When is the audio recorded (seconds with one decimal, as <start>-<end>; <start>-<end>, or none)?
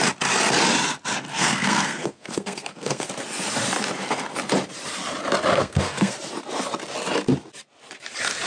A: 0.0-1.3; 3.1-5.5; 6.1-8.5